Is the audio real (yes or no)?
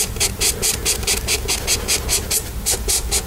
yes